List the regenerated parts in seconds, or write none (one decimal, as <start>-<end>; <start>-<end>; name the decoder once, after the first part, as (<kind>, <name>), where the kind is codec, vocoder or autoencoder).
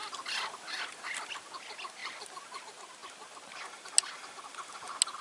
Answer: 2.0-2.6 (vocoder, BigVGAN v2)